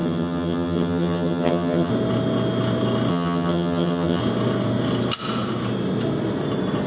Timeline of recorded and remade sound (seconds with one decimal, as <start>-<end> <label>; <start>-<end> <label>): 0.0-1.9 remade; 1.9-3.1 recorded; 3.1-4.2 remade; 4.2-6.9 recorded